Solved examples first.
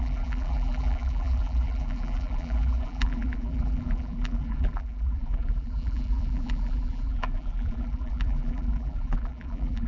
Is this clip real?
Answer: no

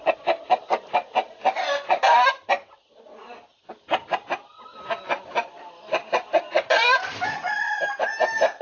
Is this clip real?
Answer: yes